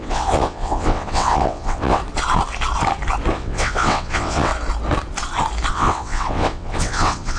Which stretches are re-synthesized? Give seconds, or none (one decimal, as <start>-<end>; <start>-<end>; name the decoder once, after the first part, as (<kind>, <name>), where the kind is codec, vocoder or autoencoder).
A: 0.0-2.0 (vocoder, WaveNeXt); 3.3-4.5; 5.7-7.4